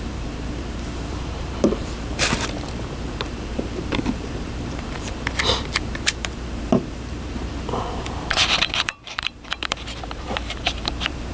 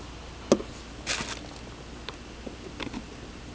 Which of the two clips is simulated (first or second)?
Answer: first